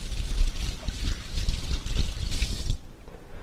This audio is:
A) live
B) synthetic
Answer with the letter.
B